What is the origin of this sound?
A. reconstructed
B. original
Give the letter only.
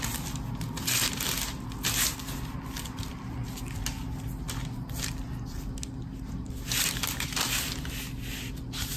B